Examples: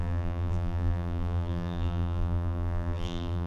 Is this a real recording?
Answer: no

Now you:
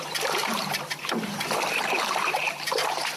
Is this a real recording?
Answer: no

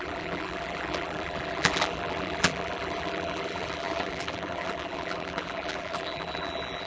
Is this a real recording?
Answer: no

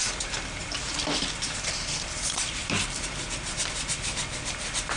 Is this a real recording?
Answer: no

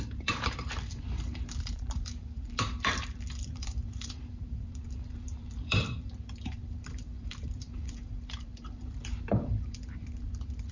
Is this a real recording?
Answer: no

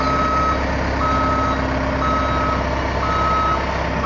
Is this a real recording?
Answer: yes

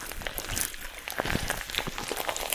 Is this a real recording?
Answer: no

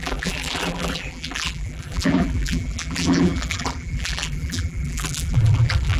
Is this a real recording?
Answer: no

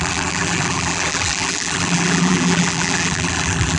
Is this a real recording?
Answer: no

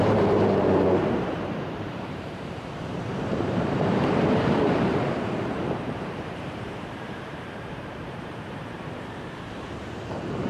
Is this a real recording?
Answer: no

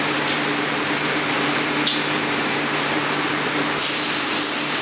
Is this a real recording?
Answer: no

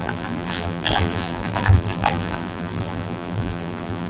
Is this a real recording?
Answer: no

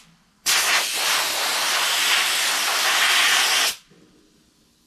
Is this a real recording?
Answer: yes